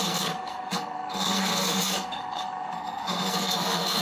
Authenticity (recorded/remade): remade